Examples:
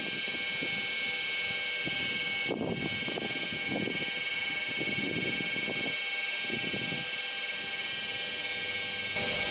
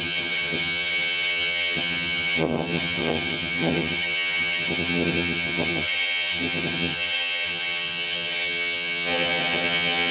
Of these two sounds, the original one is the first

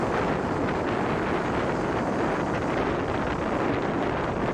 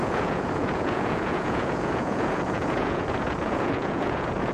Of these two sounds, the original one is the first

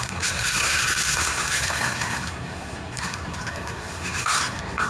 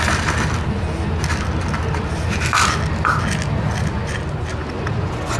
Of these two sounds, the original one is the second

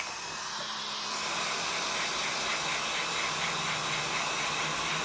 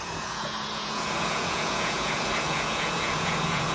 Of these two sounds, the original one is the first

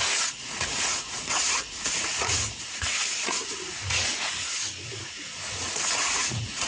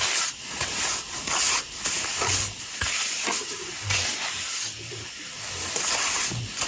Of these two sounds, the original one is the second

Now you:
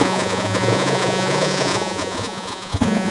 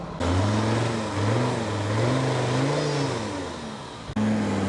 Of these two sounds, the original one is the second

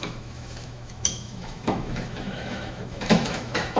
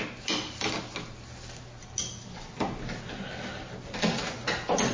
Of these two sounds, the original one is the second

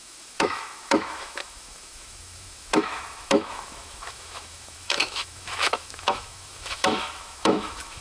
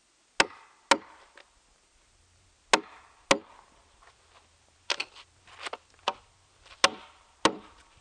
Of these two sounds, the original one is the second